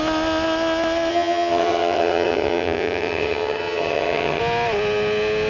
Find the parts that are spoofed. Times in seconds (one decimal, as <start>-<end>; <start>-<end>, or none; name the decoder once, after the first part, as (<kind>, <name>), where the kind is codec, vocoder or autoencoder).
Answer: 1.1-4.4 (vocoder, HiFi-GAN)